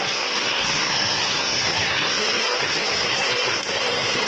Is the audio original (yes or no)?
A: no